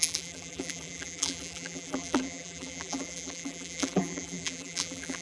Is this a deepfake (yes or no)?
yes